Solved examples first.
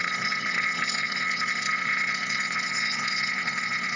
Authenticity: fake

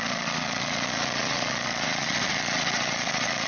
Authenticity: fake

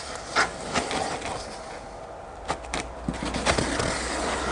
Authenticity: real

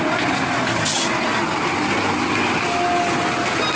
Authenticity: real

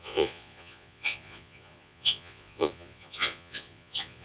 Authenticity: fake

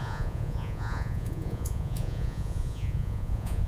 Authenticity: fake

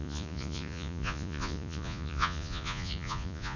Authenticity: fake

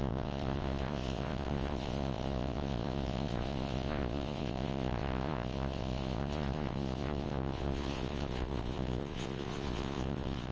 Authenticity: fake